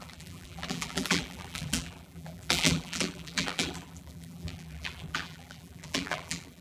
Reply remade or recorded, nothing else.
remade